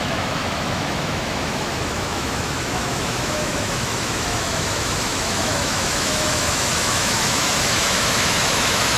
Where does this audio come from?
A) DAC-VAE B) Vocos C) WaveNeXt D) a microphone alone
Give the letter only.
A